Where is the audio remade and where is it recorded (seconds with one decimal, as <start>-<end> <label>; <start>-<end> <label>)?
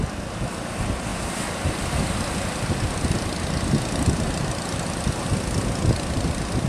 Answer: 0.0-6.7 recorded